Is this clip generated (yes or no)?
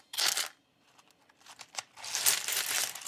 no